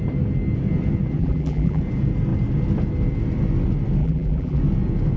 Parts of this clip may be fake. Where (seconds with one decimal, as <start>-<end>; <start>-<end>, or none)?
1.2-1.8; 4.0-4.6